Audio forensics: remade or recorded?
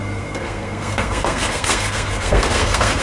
remade